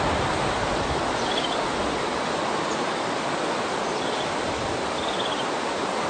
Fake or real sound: real